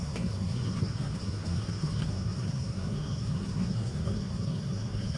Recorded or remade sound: remade